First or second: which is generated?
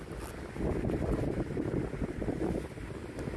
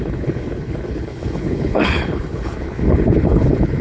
second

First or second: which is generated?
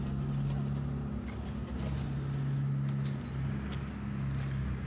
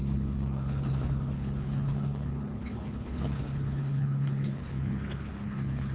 second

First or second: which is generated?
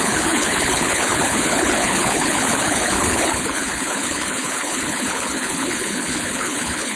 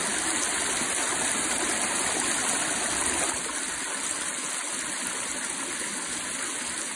first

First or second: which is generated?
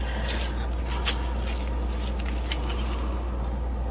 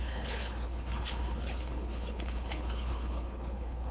second